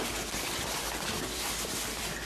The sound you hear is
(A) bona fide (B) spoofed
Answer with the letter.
B